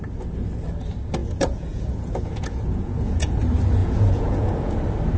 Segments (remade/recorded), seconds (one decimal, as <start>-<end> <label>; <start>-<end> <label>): 0.0-1.2 recorded; 1.2-3.3 remade; 3.3-3.8 recorded; 3.8-4.7 remade; 4.7-5.2 recorded